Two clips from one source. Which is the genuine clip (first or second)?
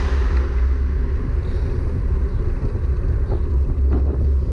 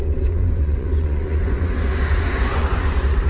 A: first